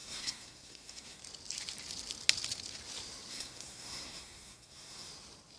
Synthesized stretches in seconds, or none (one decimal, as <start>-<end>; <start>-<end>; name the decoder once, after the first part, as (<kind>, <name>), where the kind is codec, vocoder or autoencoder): 0.0-1.2 (codec, SNAC); 3.3-5.1